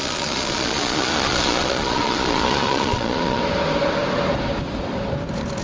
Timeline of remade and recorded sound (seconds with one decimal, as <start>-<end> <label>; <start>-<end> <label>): 0.0-3.4 remade; 3.4-5.6 recorded